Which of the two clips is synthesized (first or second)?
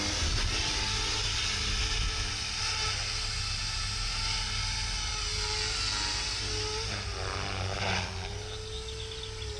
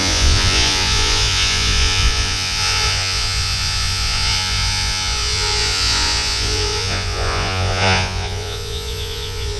second